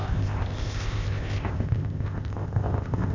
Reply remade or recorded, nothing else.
remade